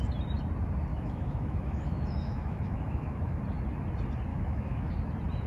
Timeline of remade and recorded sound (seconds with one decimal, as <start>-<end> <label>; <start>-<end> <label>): 0.0-0.9 recorded; 0.9-3.4 remade; 3.4-4.3 recorded; 4.3-4.9 remade; 4.9-5.5 recorded